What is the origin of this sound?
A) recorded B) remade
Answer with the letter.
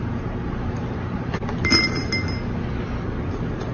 A